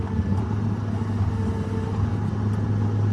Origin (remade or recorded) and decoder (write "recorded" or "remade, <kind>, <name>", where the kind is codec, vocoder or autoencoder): recorded